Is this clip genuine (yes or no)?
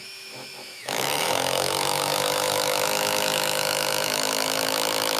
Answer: no